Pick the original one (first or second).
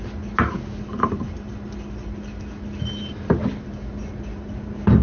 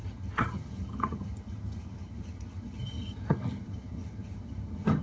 first